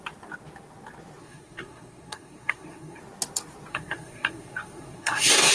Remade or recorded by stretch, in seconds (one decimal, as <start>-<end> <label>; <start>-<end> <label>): 0.0-1.2 recorded; 1.2-3.0 remade; 3.0-3.7 recorded; 3.7-5.5 remade